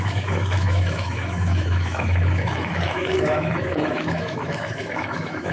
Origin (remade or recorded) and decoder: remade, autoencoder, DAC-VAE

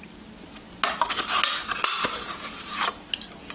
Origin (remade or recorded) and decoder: recorded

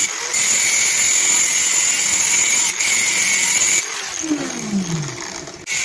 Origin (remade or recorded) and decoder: recorded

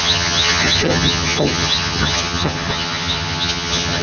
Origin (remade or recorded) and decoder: remade, vocoder, HiFi-GAN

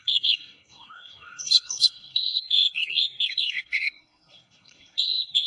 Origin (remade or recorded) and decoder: remade, codec, SNAC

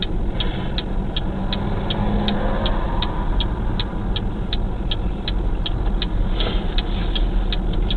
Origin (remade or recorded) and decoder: recorded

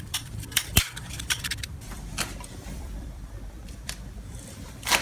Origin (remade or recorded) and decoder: remade, vocoder, BigVGAN v2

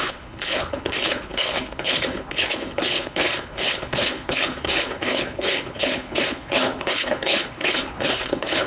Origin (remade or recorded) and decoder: remade, codec, HILCodec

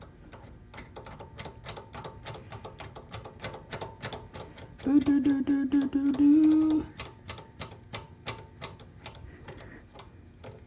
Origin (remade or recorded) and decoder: recorded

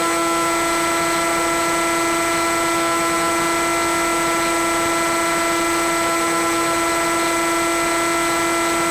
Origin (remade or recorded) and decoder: recorded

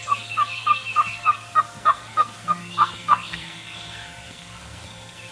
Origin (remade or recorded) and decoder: remade, codec, SNAC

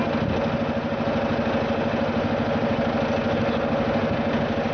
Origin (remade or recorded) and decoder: recorded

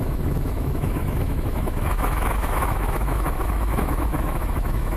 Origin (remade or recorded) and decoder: remade, autoencoder, DAC-VAE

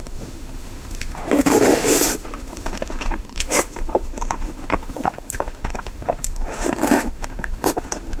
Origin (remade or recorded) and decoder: remade, autoencoder, DAC-VAE